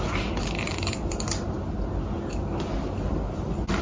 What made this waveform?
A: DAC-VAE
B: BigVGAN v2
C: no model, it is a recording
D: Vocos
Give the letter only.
C